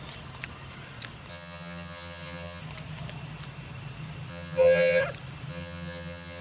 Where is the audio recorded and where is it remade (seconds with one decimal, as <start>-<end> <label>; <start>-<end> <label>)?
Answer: 0.0-1.3 recorded; 1.3-2.6 remade; 2.6-4.3 recorded; 4.3-5.0 remade; 5.0-5.5 recorded; 5.5-6.4 remade